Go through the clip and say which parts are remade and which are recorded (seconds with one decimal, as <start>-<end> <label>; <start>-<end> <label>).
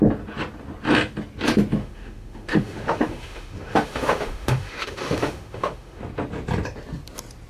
0.0-1.8 recorded; 1.8-6.0 remade; 6.0-7.5 recorded